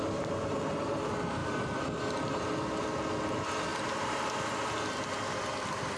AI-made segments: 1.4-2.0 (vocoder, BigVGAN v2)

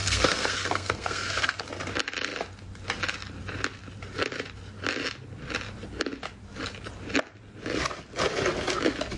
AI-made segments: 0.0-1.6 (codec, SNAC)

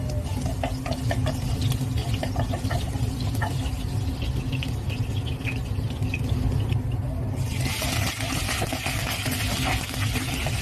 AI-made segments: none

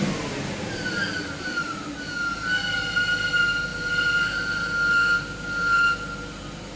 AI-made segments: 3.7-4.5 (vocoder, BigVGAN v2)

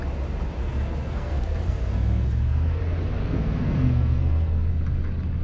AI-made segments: 0.6-2.8 (codec, SNAC); 3.2-4.7